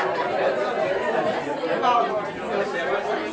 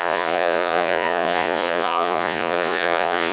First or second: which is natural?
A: first